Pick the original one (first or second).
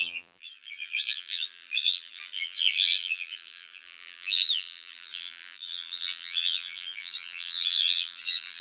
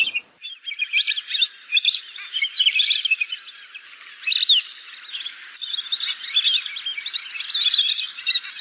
second